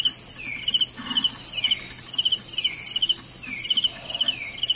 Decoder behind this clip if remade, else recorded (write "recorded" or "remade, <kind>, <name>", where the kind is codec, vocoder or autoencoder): recorded